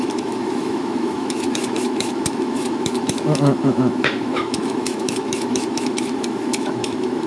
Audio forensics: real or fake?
fake